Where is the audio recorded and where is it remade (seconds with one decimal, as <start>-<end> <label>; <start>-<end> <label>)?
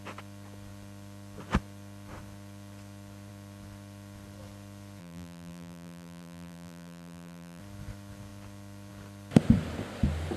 0.0-5.0 recorded; 5.0-7.6 remade; 7.6-10.4 recorded